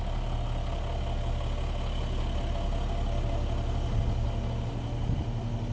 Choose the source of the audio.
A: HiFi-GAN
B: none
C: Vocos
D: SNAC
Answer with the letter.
B